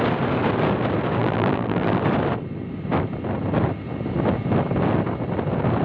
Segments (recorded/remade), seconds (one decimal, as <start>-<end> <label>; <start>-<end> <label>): 0.0-1.2 recorded; 1.2-2.0 remade; 2.0-5.8 recorded

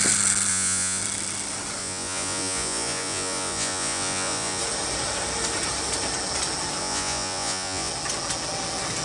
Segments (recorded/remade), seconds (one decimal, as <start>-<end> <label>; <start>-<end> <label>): 0.0-0.5 recorded; 0.5-1.0 remade; 1.0-1.8 recorded; 1.8-4.6 remade; 4.6-6.8 recorded; 6.8-7.9 remade; 7.9-9.0 recorded

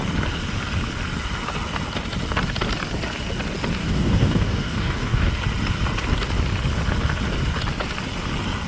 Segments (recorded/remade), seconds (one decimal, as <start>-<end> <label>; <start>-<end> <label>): 0.0-3.8 recorded; 3.8-5.3 remade; 5.3-8.7 recorded

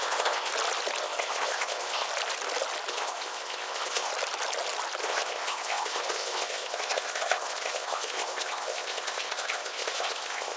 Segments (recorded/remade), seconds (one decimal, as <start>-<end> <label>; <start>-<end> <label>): 0.0-0.5 remade; 0.5-1.0 recorded; 1.0-2.1 remade; 2.1-2.9 recorded; 2.9-4.1 remade; 4.1-5.0 recorded; 5.0-10.6 remade

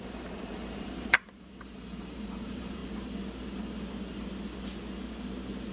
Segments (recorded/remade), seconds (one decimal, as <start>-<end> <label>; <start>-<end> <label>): 0.0-2.8 remade; 2.8-5.7 recorded

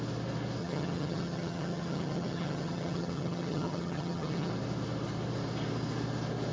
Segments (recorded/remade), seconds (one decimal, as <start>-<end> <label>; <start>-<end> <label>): 0.0-0.6 recorded; 0.6-4.5 remade; 4.5-6.5 recorded